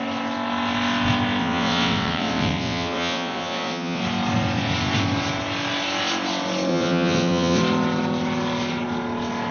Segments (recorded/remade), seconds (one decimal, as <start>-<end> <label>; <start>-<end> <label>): 0.0-1.4 recorded; 1.4-4.0 remade; 4.0-6.7 recorded; 6.7-7.6 remade; 7.6-9.5 recorded